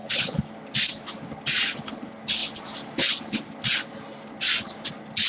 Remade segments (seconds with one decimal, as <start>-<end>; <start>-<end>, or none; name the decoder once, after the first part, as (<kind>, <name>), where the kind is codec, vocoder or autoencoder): 0.0-0.5 (codec, HILCodec)